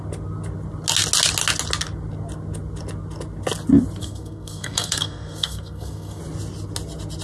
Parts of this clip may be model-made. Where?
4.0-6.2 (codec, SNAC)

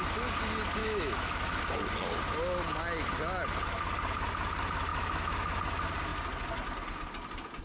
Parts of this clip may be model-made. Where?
0.8-1.6 (autoencoder, DAC-VAE); 4.9-5.6

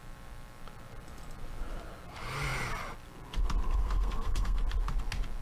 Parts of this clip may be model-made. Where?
3.8-4.6 (codec, SNAC)

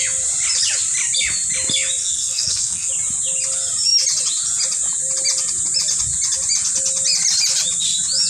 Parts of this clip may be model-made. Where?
2.0-2.9 (codec, SNAC)

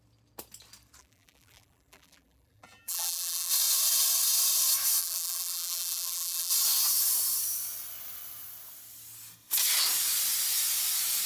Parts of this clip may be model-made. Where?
1.0-3.5 (vocoder, BigVGAN v2); 5.0-6.5

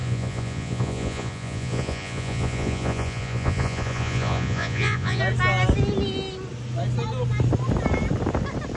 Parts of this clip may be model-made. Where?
0.0-5.2 (vocoder, Vocos)

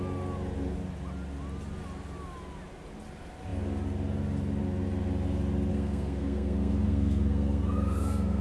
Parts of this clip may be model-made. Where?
5.7-8.4 (codec, SNAC)